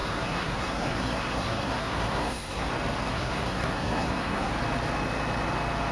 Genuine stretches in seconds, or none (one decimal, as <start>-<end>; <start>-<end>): 2.7-3.1; 4.5-5.9